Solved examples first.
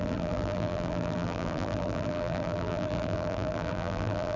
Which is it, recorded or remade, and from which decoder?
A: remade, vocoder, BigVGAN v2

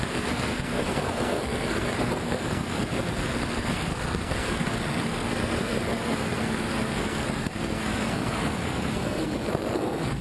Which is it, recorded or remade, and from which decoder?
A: remade, codec, SNAC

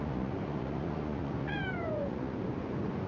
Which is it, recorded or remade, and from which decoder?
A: remade, vocoder, Vocos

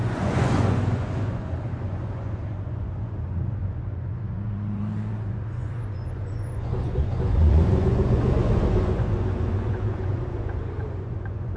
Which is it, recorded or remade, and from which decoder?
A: remade, vocoder, Vocos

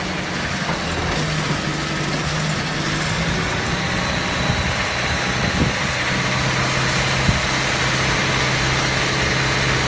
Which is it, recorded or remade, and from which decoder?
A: recorded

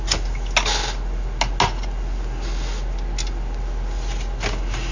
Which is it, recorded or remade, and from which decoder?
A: recorded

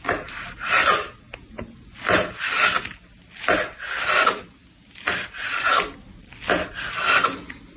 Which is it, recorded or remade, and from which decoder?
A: recorded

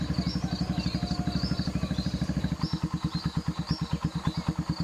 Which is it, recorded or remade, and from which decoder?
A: recorded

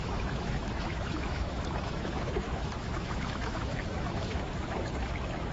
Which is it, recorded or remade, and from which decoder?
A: remade, autoencoder, DAC-VAE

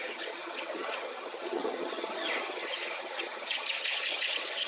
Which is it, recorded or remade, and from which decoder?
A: remade, vocoder, HiFi-GAN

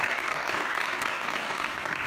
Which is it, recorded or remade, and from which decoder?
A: remade, codec, DAC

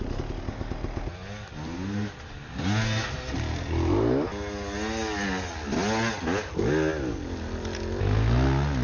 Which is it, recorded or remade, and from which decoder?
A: recorded